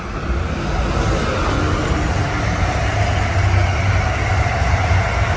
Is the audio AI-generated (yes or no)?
no